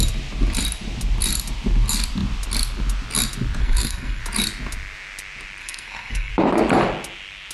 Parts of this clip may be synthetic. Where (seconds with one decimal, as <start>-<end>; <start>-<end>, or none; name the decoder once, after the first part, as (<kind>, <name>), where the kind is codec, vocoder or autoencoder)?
3.6-4.2 (codec, SNAC); 5.6-6.3